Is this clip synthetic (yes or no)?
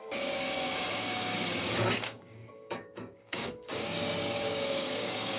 yes